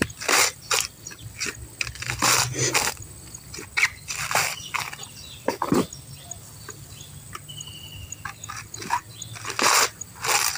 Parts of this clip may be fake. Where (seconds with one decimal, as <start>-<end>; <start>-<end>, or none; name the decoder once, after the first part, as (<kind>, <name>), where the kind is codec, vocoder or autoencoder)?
none

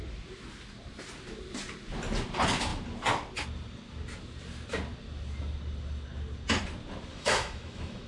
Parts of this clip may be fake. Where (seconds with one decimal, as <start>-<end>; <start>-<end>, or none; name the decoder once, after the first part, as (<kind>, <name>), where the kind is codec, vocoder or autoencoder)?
7.1-8.1 (autoencoder, DAC-VAE)

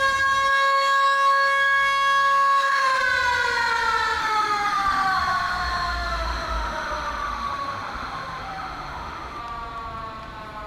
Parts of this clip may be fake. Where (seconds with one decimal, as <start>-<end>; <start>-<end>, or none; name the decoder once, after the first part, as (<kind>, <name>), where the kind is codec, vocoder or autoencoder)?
0.5-3.0 (autoencoder, DAC-VAE); 4.2-9.4

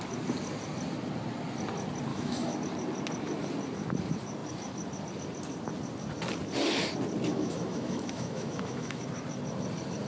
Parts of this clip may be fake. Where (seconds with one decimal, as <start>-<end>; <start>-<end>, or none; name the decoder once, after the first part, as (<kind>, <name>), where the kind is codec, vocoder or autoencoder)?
2.1-2.6 (autoencoder, DAC-VAE); 7.3-9.0

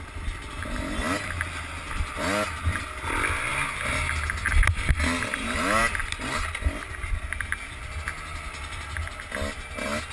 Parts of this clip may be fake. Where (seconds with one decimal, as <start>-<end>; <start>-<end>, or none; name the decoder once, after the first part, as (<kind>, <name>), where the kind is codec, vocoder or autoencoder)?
none

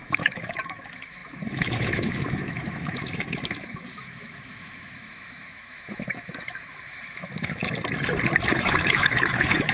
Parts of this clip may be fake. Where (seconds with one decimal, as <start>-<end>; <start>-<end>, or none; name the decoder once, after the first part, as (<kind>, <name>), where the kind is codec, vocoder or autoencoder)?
0.0-7.6 (autoencoder, DAC-VAE); 8.5-9.7

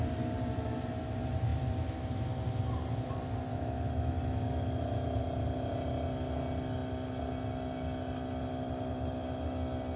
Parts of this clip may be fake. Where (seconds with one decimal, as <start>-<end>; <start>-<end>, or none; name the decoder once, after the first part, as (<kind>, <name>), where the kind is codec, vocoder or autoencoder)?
3.5-5.2 (autoencoder, DAC-VAE)